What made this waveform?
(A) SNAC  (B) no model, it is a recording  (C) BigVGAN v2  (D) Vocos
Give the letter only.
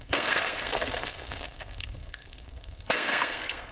A